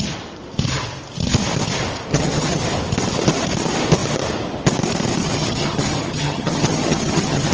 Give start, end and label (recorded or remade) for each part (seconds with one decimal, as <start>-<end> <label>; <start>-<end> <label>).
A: 0.0-2.1 recorded; 2.1-2.6 remade; 2.6-5.2 recorded; 5.2-7.5 remade